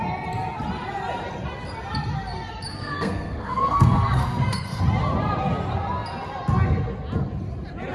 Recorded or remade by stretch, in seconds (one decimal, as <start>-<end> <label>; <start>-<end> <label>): 0.0-2.7 recorded; 2.7-4.8 remade; 4.8-7.9 recorded